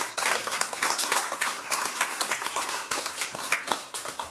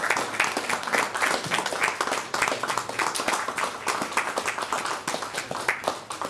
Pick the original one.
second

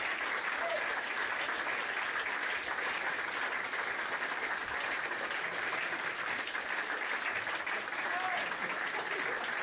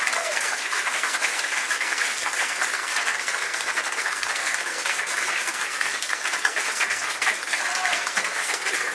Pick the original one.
first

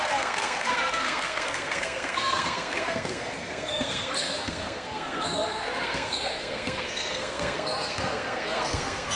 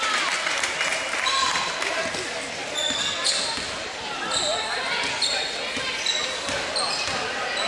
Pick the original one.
second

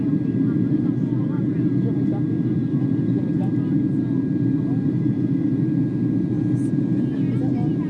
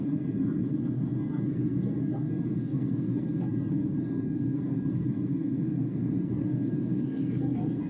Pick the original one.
first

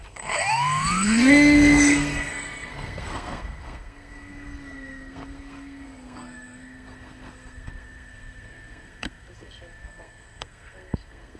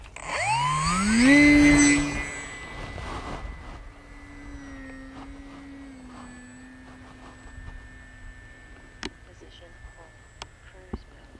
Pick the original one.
second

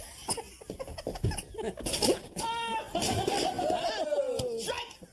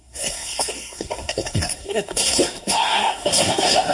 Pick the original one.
first